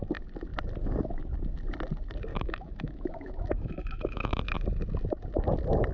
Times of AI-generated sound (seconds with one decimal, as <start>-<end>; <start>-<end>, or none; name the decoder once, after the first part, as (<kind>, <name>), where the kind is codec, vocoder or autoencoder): 2.3-4.4 (autoencoder, DAC-VAE)